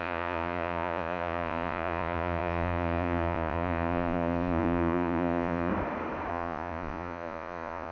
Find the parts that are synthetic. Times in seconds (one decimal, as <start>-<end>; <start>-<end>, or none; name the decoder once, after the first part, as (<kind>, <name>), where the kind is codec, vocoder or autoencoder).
0.0-5.7 (vocoder, Vocos); 6.3-7.9